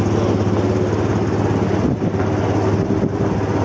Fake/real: real